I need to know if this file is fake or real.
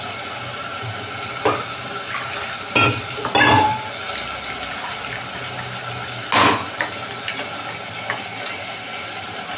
real